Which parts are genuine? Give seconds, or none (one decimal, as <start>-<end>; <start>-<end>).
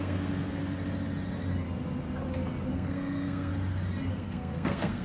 0.6-2.7; 3.5-4.1